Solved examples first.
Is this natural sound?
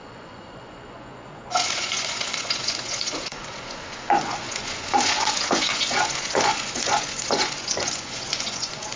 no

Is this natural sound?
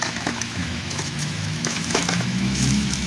no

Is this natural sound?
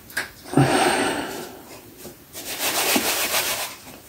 no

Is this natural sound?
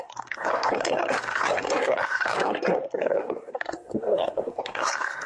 no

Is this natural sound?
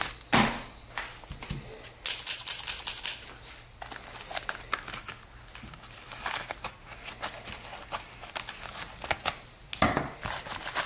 yes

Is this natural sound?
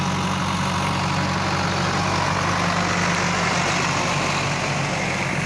yes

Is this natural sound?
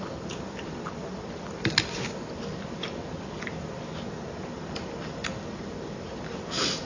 yes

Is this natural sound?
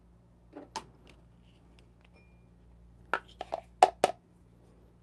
yes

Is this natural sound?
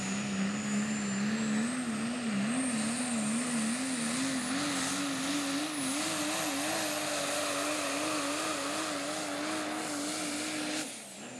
yes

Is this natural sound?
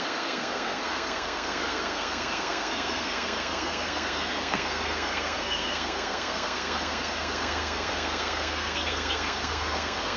no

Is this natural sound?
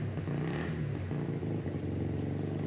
yes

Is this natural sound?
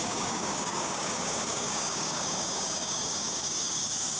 no